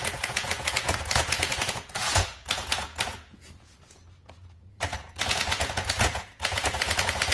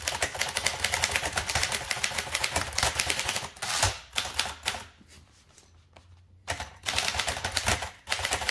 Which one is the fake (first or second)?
first